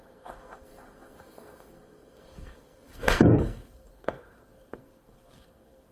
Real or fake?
fake